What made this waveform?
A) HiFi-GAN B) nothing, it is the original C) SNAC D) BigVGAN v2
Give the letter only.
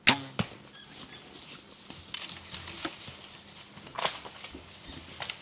B